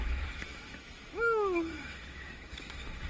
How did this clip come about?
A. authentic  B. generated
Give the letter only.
B